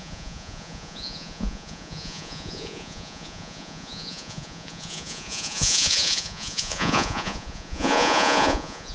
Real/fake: fake